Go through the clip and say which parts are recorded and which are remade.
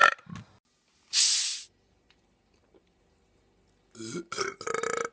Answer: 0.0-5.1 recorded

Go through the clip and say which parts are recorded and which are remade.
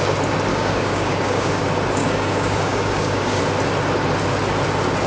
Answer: 0.0-0.5 recorded; 0.5-1.6 remade; 1.6-2.0 recorded; 2.0-3.4 remade; 3.4-5.1 recorded